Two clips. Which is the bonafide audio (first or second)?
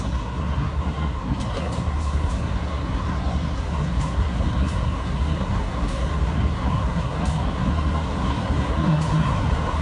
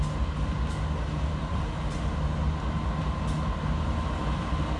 second